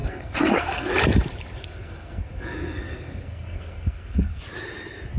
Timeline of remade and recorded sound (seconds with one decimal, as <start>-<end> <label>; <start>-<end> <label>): 0.0-0.9 remade; 0.9-1.6 recorded; 1.6-4.4 remade; 4.4-5.2 recorded